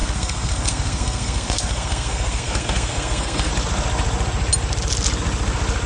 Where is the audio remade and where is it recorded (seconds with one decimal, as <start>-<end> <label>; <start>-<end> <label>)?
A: 0.0-3.5 remade; 3.5-5.9 recorded